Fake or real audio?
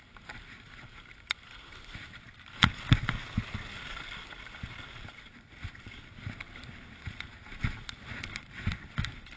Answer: real